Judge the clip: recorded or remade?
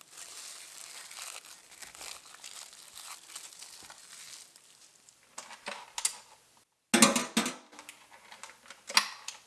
recorded